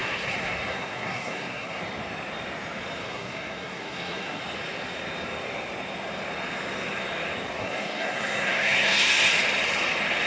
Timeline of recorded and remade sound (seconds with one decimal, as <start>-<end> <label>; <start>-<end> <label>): 0.0-1.8 remade; 1.8-3.0 recorded; 3.0-4.4 remade; 4.4-7.6 recorded; 7.6-9.3 remade; 9.3-10.3 recorded